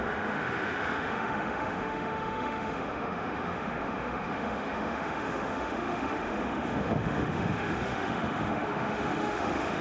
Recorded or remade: remade